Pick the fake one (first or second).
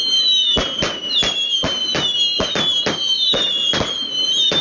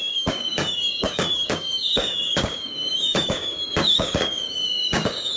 second